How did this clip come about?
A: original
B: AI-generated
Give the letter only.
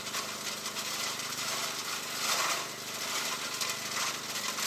A